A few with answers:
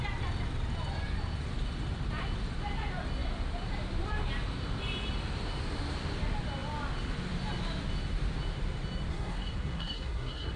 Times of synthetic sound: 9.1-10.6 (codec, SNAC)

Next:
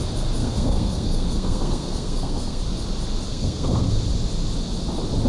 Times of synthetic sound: 0.4-2.6 (codec, SNAC); 3.3-4.0

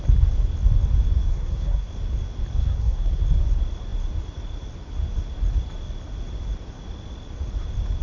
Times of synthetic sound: 1.3-1.9 (codec, SNAC); 2.6-3.2

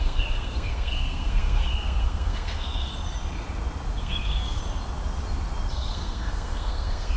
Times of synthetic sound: 0.0-2.9 (codec, SNAC); 4.0-4.6; 5.7-7.2